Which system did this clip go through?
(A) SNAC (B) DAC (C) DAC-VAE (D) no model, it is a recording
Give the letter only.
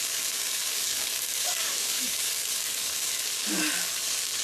B